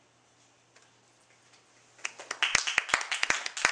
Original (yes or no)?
yes